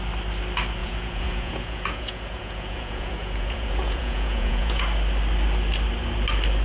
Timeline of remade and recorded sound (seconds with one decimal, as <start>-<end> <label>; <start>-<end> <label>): 0.0-0.8 recorded; 0.8-4.8 remade; 4.8-6.6 recorded